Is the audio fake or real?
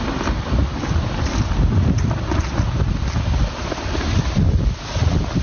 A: real